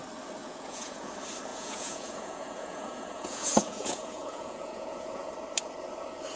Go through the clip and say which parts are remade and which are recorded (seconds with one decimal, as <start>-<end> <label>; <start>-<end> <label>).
0.0-0.4 recorded; 0.4-1.1 remade; 1.1-1.5 recorded; 1.5-5.3 remade; 5.3-6.4 recorded